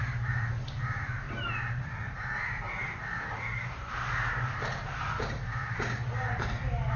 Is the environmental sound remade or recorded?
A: remade